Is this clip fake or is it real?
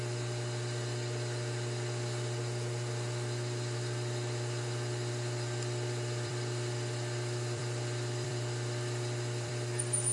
fake